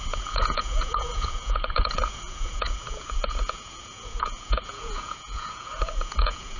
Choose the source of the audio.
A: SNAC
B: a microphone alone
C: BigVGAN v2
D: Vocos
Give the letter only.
D